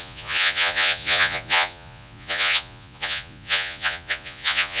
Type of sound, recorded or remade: remade